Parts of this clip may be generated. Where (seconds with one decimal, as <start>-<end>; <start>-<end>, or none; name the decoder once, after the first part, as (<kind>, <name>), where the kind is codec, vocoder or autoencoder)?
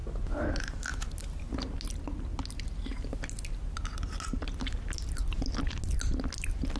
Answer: none